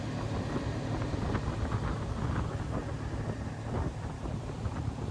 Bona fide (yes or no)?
yes